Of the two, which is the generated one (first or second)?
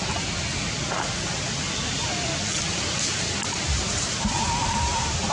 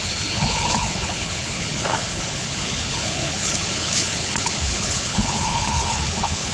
second